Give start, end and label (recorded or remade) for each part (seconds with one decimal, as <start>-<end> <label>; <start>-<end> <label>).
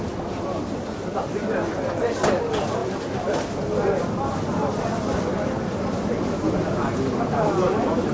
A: 0.0-8.1 recorded